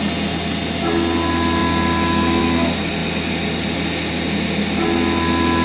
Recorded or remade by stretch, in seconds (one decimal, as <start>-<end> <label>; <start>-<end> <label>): 0.0-5.6 recorded